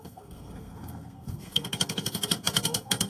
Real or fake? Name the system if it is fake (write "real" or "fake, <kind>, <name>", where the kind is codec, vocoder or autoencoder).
fake, codec, SNAC